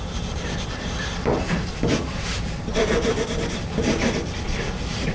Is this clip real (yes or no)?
no